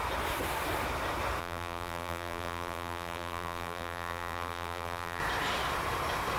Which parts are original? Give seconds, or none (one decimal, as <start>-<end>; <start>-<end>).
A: 0.0-1.4; 5.2-6.4